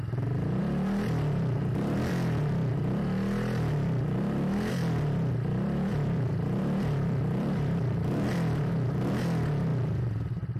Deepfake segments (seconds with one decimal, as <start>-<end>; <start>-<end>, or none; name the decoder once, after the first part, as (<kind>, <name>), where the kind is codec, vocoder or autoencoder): 5.9-8.7 (vocoder, BigVGAN v2); 9.7-10.6